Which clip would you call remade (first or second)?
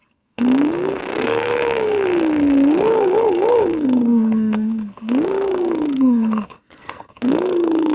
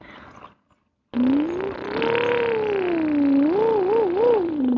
first